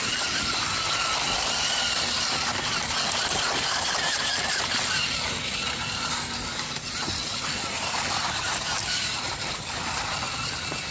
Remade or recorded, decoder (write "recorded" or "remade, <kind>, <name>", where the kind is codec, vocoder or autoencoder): recorded